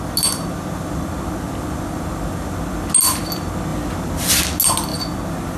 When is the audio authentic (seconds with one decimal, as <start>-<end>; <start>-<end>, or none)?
0.0-5.6